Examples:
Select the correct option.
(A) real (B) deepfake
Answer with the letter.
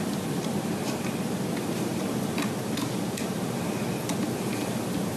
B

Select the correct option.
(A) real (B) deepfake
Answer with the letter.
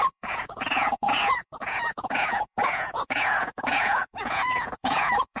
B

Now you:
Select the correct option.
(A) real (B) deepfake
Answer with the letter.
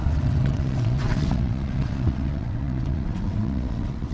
B